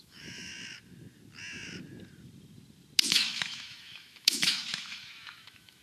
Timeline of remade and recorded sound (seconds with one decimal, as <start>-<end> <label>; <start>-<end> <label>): 0.0-0.5 remade; 0.5-3.1 recorded; 3.1-5.8 remade